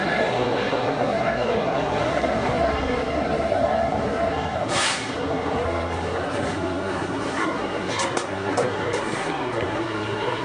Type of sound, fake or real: fake